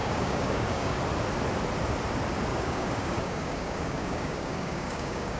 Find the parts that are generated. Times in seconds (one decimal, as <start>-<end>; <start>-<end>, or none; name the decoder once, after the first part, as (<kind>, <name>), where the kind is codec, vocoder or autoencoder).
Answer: 0.0-1.0 (codec, DAC); 2.5-5.4